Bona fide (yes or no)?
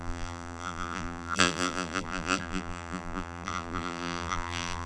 no